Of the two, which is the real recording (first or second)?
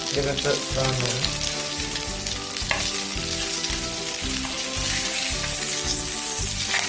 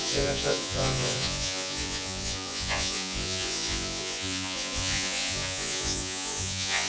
first